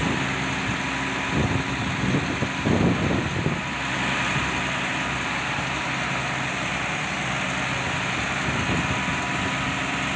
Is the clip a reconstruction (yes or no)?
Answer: no